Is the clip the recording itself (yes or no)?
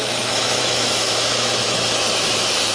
no